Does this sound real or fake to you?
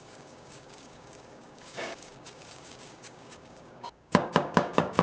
fake